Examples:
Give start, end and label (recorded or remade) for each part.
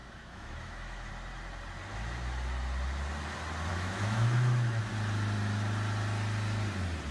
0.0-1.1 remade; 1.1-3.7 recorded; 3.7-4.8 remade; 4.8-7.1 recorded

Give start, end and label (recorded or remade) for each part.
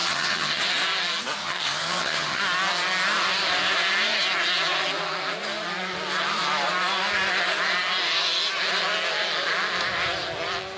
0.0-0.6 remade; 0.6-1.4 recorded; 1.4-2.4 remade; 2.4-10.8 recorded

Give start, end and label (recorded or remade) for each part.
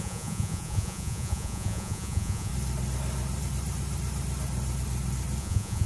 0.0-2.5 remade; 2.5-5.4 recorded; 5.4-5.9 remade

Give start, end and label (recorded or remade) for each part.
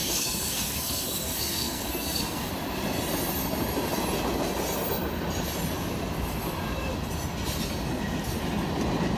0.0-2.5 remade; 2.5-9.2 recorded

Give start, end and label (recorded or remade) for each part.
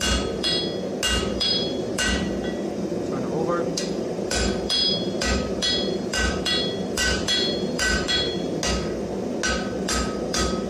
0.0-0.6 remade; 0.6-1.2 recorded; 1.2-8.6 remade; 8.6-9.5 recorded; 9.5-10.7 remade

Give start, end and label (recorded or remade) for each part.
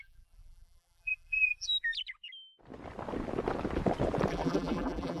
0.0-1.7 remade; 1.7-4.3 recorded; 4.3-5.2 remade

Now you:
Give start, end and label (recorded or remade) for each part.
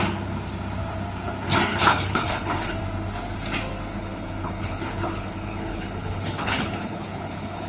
0.0-1.7 recorded; 1.7-2.8 remade; 2.8-3.9 recorded; 3.9-7.7 remade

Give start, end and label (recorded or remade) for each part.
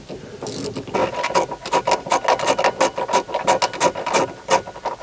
0.0-5.0 recorded